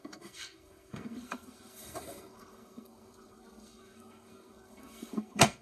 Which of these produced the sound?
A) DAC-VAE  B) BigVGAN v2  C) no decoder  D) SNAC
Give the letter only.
D